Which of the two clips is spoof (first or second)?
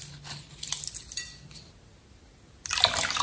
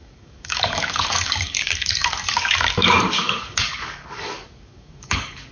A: second